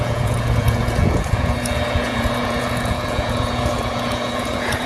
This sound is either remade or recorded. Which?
remade